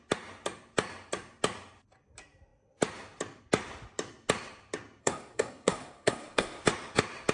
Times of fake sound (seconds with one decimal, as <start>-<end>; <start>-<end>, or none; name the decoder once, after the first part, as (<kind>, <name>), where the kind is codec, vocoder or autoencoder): 5.0-6.6 (codec, SNAC)